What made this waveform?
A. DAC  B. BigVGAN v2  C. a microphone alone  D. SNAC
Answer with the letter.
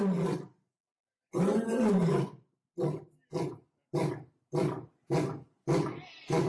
C